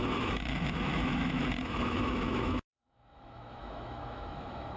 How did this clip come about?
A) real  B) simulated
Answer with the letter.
B